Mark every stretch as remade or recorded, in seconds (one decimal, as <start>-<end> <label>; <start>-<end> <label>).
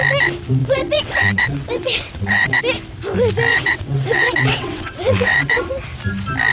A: 0.0-0.6 recorded; 0.6-2.6 remade; 2.6-3.5 recorded; 3.5-5.7 remade; 5.7-6.5 recorded